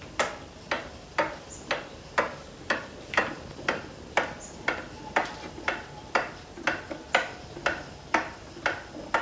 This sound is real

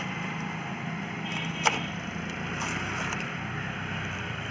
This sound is fake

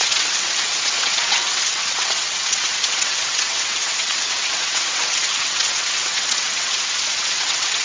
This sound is fake